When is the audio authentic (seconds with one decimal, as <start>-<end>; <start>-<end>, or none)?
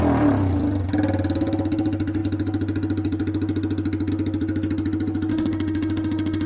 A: 0.0-5.3